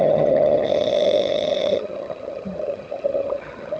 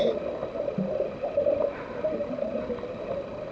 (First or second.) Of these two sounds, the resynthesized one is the first